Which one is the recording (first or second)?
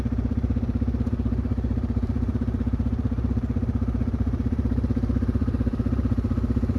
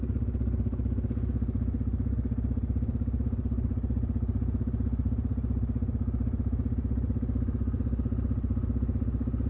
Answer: second